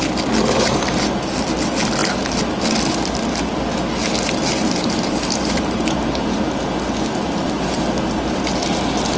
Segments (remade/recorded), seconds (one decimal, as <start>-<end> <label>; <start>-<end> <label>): 0.0-9.2 recorded

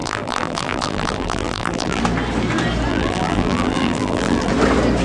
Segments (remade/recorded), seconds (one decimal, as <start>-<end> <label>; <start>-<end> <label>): 0.0-2.0 remade; 2.0-2.9 recorded; 2.9-4.5 remade; 4.5-5.0 recorded